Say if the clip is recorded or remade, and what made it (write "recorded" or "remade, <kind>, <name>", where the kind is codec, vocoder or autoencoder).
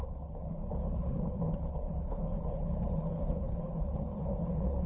remade, codec, HILCodec